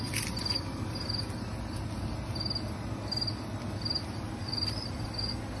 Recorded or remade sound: recorded